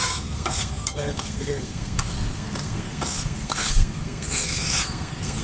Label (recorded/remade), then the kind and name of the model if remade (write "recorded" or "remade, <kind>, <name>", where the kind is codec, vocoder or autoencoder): remade, codec, SNAC